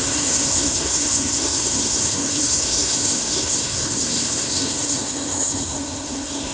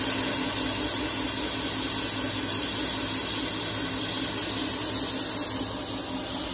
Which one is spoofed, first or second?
first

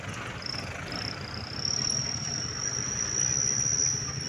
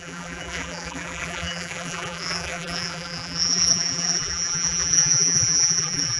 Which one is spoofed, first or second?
second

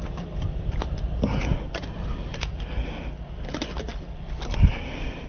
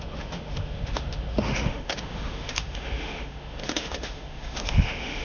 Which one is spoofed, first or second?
second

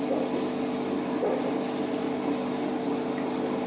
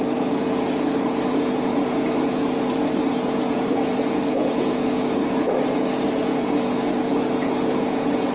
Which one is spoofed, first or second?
second